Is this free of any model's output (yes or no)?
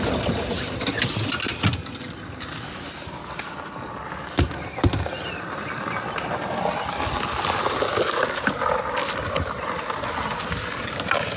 yes